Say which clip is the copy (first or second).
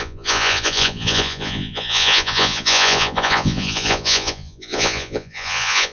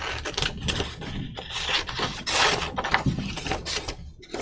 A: first